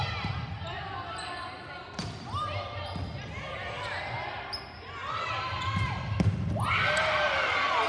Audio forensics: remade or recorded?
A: recorded